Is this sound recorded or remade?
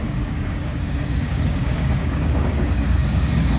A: remade